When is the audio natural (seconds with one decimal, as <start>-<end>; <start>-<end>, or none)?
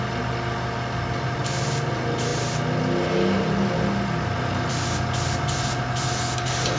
0.0-6.8